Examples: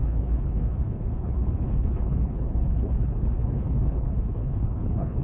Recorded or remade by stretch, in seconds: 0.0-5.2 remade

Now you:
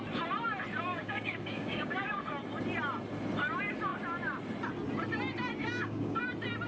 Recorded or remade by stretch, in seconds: 0.0-0.9 recorded; 0.9-2.2 remade; 2.2-5.6 recorded; 5.6-6.2 remade; 6.2-6.7 recorded

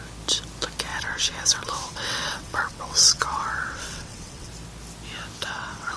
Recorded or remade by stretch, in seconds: 0.0-0.9 recorded; 0.9-4.5 remade; 4.5-5.4 recorded; 5.4-6.0 remade